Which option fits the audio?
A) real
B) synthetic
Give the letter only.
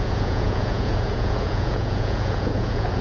B